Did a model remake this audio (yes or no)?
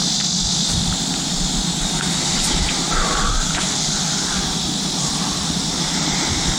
no